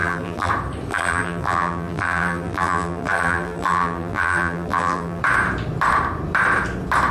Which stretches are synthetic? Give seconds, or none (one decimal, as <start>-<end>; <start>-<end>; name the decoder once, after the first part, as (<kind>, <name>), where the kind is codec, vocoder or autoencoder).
0.0-0.5 (vocoder, BigVGAN v2); 0.9-5.2